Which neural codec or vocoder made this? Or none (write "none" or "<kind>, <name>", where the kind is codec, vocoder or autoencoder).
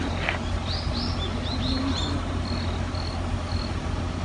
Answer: none